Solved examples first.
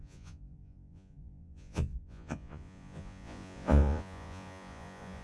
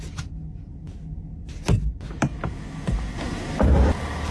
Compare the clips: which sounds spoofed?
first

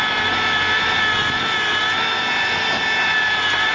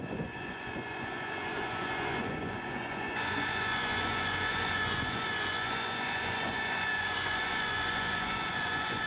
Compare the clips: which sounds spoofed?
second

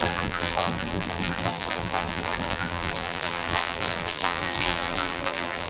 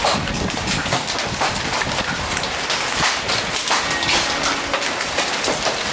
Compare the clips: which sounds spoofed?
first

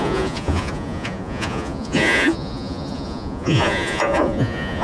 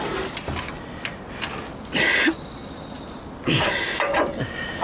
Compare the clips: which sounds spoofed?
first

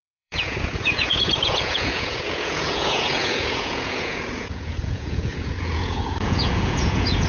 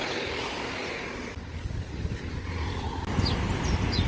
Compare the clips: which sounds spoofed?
first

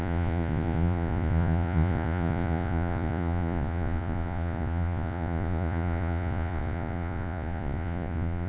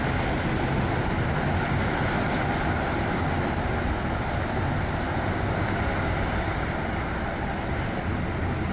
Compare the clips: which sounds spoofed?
first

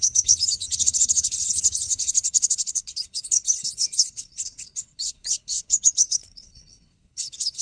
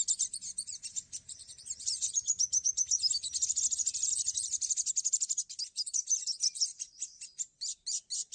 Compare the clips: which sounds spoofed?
first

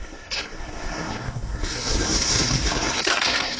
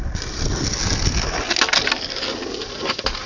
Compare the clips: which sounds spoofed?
first